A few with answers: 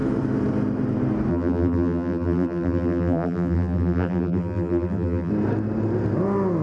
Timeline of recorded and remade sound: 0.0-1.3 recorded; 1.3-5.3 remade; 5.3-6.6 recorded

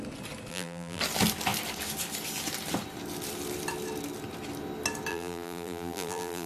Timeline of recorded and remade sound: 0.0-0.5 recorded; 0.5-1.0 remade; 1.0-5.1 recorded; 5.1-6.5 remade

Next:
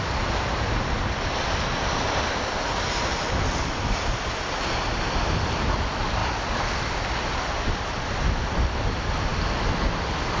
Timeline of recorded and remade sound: 0.0-10.4 recorded